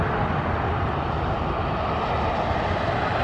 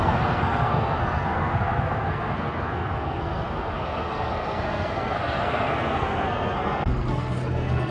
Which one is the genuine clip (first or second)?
first